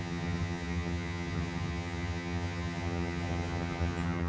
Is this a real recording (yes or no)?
no